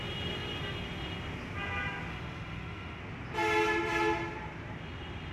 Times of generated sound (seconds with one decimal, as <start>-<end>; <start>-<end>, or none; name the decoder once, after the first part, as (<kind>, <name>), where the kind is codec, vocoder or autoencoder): 2.1-3.0 (autoencoder, DAC-VAE)

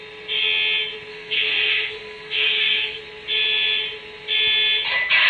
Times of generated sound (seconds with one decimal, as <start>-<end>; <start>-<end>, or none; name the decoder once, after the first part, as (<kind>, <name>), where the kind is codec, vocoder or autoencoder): 1.1-3.0 (codec, SNAC)

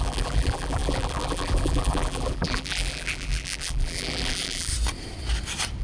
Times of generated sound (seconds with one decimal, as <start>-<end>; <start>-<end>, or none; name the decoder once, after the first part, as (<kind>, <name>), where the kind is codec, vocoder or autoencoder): 0.0-4.7 (vocoder, BigVGAN v2)

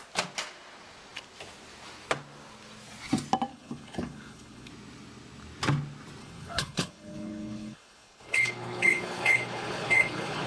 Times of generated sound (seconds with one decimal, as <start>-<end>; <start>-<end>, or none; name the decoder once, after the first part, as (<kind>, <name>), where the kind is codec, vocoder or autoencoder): 3.5-4.7 (codec, HILCodec); 6.2-10.5

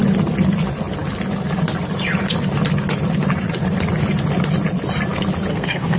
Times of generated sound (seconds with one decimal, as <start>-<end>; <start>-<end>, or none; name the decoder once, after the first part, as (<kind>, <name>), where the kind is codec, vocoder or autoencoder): 5.5-6.0 (codec, SNAC)

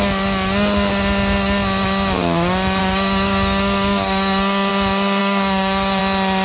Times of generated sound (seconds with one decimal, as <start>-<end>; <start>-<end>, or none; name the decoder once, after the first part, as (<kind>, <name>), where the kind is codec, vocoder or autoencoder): 2.8-4.7 (codec, DAC); 5.2-6.0